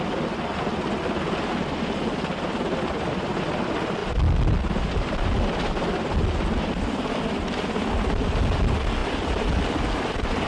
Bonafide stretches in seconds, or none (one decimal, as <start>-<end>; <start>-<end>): 0.0-10.5

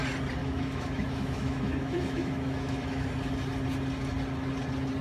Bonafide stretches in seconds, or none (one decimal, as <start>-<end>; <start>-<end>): 0.0-0.4; 3.1-5.0